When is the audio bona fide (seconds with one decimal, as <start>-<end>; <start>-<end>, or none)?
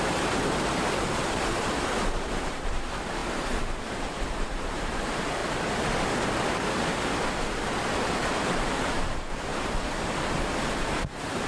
5.4-8.2; 9.5-10.7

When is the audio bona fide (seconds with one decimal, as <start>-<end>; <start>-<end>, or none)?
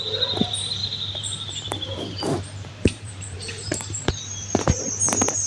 0.0-0.8; 4.1-5.5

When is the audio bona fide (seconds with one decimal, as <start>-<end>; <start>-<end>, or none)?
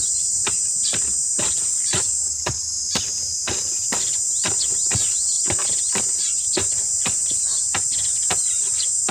none